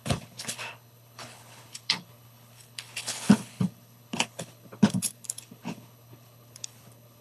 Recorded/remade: remade